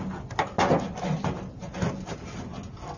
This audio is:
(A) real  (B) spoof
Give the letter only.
A